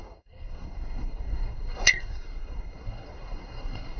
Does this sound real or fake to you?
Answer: fake